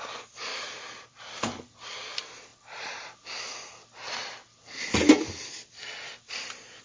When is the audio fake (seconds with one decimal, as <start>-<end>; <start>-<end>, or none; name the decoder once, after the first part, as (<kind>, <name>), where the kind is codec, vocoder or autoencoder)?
0.5-1.2 (vocoder, BigVGAN v2)